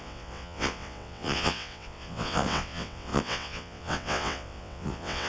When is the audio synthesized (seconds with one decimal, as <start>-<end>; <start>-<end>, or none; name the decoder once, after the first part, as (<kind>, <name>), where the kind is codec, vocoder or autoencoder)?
0.0-5.3 (vocoder, WaveNeXt)